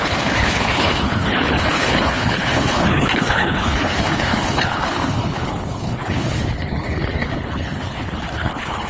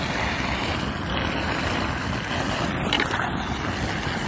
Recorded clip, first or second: second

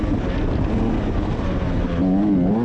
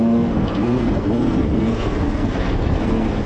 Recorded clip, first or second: first